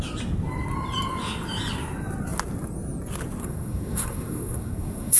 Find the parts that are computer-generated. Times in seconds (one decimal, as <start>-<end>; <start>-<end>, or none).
3.4-5.2